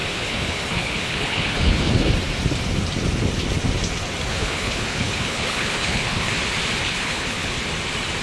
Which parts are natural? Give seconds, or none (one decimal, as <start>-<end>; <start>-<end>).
2.1-4.3; 6.3-6.8; 7.6-8.2